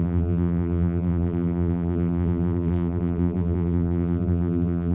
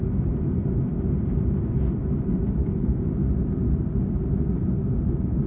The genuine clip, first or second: second